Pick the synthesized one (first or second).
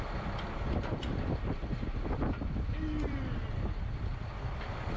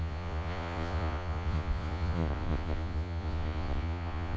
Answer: second